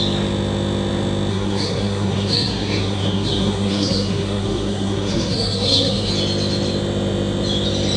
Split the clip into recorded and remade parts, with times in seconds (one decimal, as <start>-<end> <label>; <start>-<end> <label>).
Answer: 0.0-1.3 recorded; 1.3-6.1 remade; 6.1-8.0 recorded